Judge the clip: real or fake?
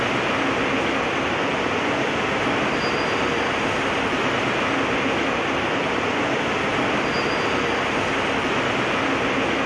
real